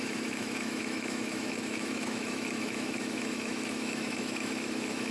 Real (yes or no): no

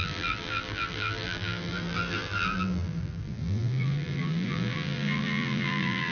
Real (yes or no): no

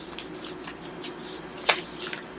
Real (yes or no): yes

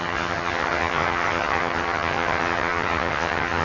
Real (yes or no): no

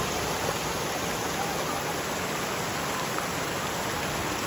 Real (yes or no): yes